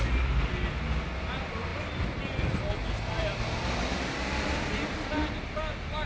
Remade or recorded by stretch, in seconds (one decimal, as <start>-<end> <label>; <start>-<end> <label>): 0.0-6.1 recorded